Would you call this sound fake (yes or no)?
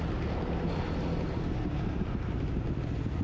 no